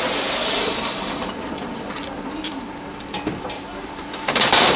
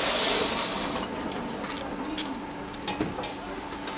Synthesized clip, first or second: first